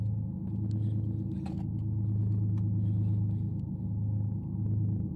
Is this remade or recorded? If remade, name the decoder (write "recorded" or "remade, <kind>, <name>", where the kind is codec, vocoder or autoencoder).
recorded